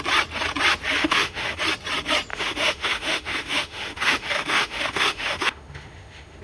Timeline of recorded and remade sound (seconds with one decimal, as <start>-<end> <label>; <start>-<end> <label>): 0.0-1.0 recorded; 1.0-1.6 remade; 1.6-2.3 recorded; 2.3-6.4 remade